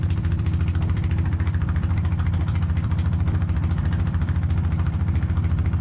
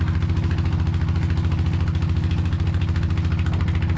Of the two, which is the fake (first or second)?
first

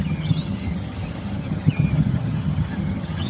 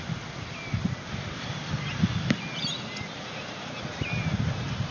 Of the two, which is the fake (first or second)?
first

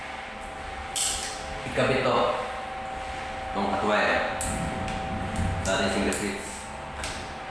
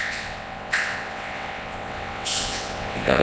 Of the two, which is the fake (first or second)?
second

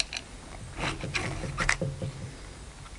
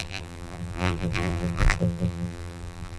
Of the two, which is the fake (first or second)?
second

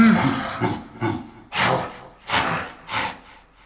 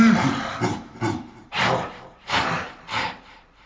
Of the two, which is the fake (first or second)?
second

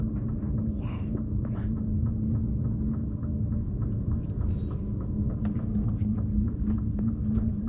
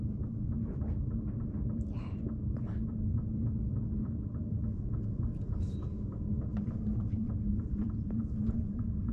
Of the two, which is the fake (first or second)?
second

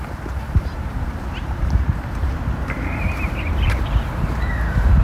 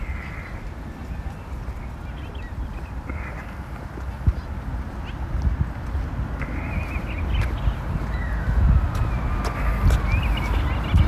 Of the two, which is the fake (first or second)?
first